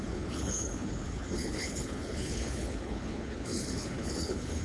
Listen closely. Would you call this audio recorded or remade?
remade